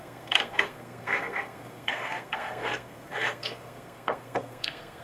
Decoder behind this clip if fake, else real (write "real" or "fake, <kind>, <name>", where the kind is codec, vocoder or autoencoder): fake, codec, SNAC